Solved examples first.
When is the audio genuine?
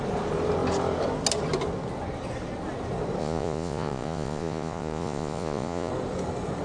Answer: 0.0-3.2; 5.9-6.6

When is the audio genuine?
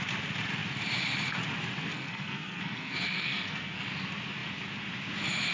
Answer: 0.0-1.9; 3.9-5.5